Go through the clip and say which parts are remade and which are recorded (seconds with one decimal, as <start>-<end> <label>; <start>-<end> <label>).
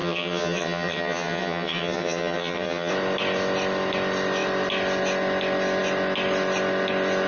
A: 0.0-2.9 remade; 2.9-7.3 recorded